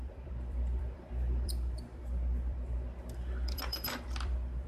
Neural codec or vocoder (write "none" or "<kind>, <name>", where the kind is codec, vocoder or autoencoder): vocoder, BigVGAN v2